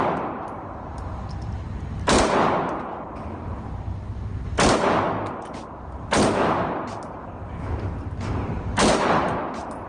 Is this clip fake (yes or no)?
no